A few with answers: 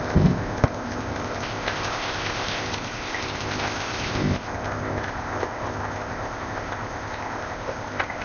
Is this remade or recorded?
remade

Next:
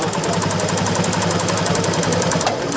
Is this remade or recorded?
recorded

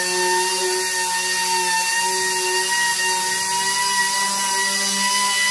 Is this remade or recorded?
recorded